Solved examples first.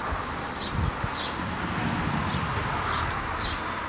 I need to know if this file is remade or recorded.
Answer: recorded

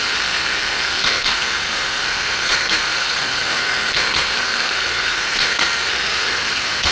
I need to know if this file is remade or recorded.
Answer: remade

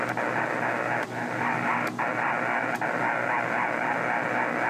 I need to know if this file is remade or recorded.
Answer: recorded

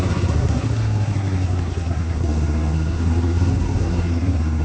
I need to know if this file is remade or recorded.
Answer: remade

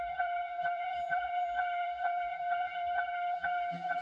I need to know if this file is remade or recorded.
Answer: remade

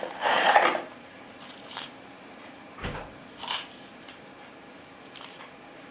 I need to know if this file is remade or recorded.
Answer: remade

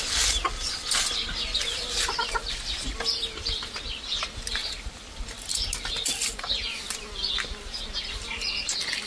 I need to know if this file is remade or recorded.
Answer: recorded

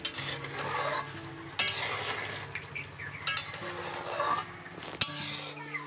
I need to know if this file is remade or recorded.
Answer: recorded